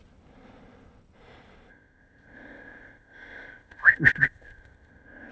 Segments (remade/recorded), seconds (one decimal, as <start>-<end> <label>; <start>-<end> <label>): 0.0-1.7 recorded; 1.7-5.3 remade

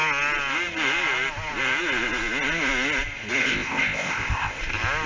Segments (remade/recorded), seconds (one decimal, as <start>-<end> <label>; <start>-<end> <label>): 0.0-3.4 recorded; 3.4-4.6 remade; 4.6-5.1 recorded

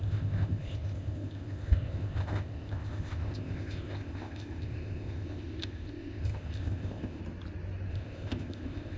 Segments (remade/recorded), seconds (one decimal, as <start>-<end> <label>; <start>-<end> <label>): 0.0-7.2 remade; 7.2-7.9 recorded; 7.9-9.0 remade